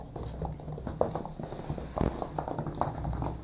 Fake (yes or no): no